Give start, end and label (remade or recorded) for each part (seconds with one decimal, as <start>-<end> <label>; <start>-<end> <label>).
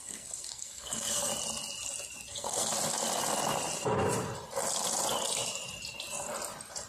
0.0-1.3 remade; 1.3-2.3 recorded; 2.3-2.7 remade; 2.7-6.9 recorded